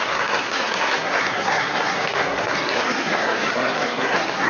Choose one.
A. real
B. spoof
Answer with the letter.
B